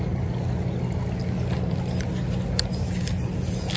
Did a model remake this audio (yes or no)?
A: no